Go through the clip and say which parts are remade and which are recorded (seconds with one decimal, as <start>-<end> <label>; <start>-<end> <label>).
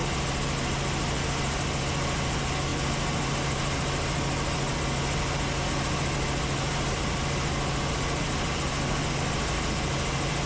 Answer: 0.0-10.5 recorded